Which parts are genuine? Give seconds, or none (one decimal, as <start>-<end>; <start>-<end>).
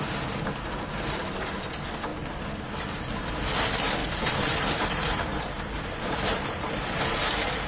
0.0-2.1; 3.1-4.0; 6.7-7.7